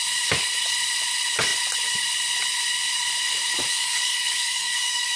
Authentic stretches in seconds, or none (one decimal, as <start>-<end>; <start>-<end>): 0.0-3.7